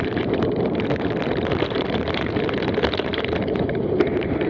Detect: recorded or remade remade